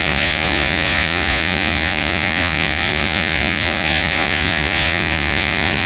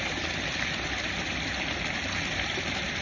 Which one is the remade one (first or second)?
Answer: first